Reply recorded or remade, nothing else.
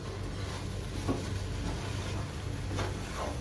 recorded